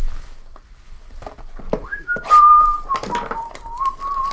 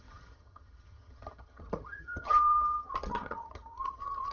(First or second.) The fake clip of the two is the second